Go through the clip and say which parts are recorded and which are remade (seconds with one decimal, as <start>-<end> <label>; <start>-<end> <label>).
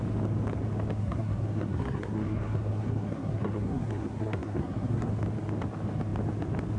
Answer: 0.0-1.0 recorded; 1.0-5.1 remade; 5.1-6.8 recorded